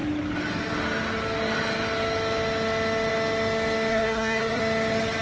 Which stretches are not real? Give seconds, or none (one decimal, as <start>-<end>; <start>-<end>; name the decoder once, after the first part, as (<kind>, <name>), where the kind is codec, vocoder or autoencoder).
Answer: 3.9-4.6 (codec, SNAC)